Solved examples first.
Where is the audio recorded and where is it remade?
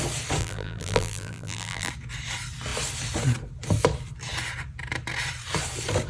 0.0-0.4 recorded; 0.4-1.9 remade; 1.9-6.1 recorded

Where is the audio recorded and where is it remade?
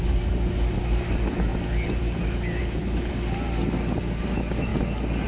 0.0-5.3 recorded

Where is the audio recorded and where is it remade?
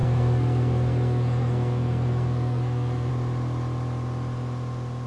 0.0-3.1 remade; 3.1-5.1 recorded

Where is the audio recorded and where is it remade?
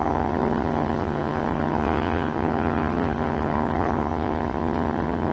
0.0-5.3 remade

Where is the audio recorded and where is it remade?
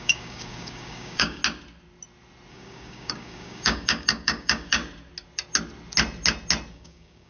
0.0-1.4 remade; 1.4-2.5 recorded; 2.5-4.8 remade; 4.8-6.7 recorded; 6.7-7.3 remade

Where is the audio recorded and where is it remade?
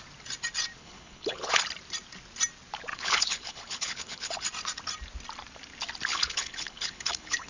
0.0-0.8 recorded; 0.8-1.6 remade; 1.6-2.9 recorded; 2.9-4.3 remade; 4.3-6.1 recorded; 6.1-7.5 remade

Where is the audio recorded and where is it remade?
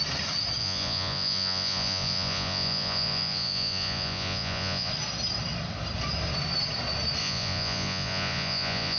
0.0-0.6 recorded; 0.6-4.9 remade; 4.9-7.2 recorded; 7.2-9.0 remade